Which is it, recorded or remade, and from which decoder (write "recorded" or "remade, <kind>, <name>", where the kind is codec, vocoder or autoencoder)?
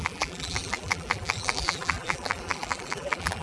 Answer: remade, vocoder, BigVGAN v2